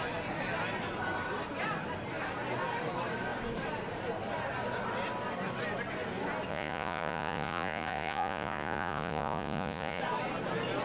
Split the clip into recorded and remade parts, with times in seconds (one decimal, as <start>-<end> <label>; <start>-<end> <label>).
0.0-6.5 recorded; 6.5-10.0 remade; 10.0-10.8 recorded